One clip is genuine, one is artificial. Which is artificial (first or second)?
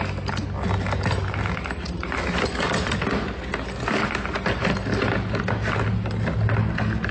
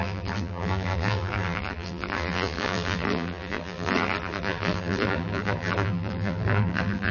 second